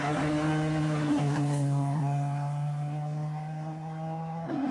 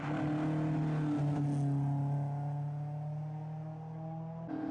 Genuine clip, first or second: second